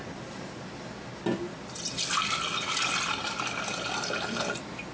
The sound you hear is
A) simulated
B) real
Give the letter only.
B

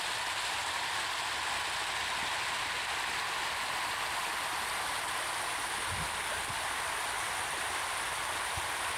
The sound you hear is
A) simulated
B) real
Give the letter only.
B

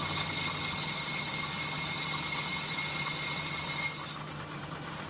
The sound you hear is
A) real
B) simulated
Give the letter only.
A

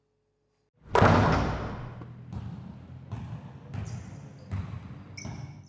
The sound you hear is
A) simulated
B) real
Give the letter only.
B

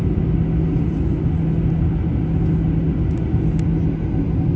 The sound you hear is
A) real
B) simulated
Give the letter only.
A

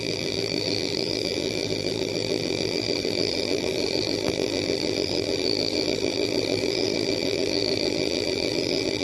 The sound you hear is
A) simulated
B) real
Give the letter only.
A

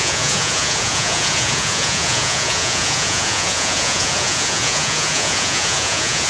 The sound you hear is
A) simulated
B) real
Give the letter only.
A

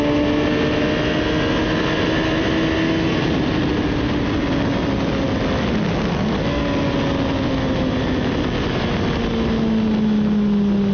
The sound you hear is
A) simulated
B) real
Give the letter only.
B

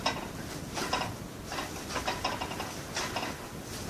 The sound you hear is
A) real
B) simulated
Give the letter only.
A